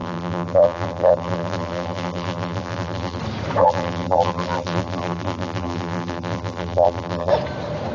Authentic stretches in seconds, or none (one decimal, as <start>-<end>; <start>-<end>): 3.2-3.6; 7.3-7.9